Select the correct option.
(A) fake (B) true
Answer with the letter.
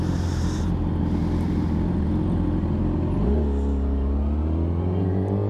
B